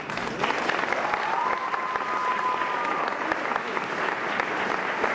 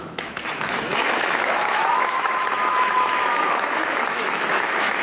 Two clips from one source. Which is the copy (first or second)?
second